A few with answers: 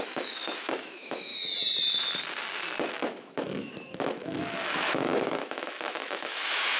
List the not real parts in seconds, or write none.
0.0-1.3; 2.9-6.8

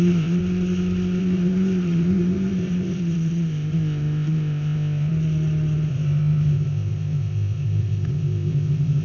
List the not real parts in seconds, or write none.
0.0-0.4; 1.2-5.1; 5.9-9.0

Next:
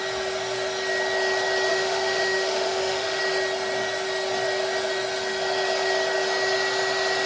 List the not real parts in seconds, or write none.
1.7-3.2

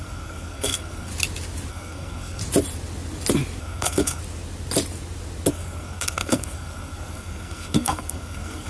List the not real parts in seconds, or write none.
0.0-1.1; 1.7-2.4; 3.6-4.2; 5.5-8.7

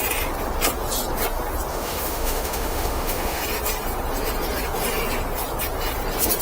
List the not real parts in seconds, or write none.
1.7-3.4

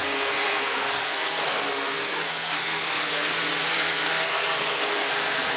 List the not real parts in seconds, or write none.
0.0-3.3; 3.7-5.1